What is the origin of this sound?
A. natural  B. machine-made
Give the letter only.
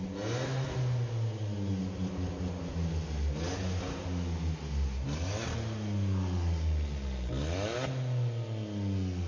A